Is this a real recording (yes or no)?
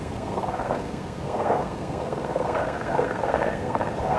no